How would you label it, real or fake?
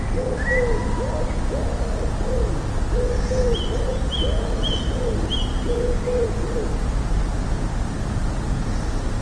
real